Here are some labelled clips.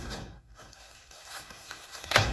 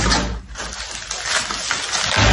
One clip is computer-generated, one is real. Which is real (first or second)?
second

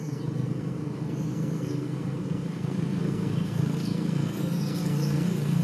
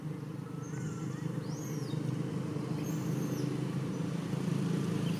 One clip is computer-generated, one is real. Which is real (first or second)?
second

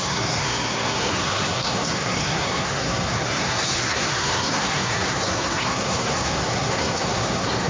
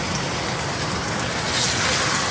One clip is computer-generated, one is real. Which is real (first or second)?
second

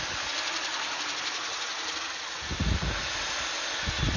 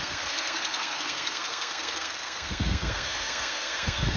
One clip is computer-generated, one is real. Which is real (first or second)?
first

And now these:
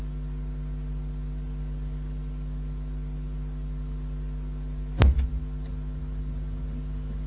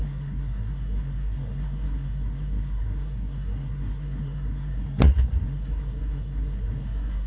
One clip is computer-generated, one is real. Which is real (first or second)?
first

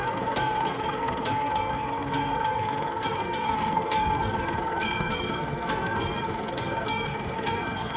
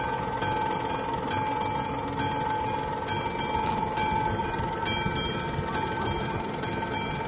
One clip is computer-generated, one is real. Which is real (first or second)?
second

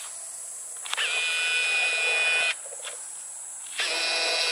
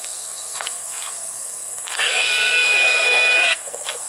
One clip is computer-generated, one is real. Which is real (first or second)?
first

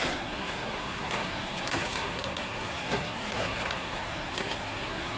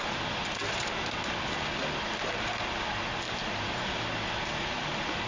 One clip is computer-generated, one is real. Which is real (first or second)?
second